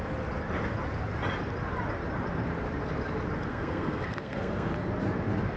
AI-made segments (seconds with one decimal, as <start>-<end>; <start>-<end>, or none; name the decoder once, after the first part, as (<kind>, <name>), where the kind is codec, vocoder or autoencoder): 3.5-4.7 (codec, SNAC)